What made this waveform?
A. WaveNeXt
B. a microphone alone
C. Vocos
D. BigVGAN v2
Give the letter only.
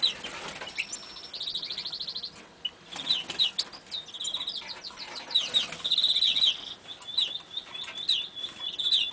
B